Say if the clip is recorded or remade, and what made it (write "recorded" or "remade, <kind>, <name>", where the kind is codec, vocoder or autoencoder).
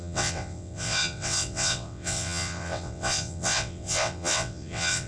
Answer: remade, vocoder, WaveNeXt